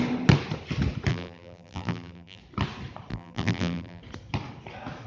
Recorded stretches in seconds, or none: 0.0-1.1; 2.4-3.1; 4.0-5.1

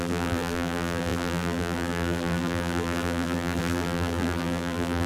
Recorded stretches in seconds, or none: none

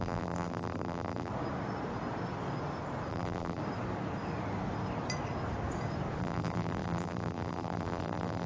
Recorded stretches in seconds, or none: 1.3-3.1; 3.6-6.2

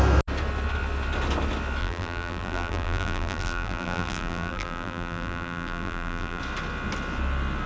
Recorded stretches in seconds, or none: 0.0-1.8; 6.4-7.7

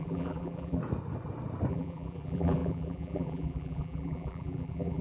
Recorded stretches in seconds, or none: 0.8-1.7